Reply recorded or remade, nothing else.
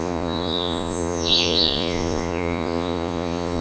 remade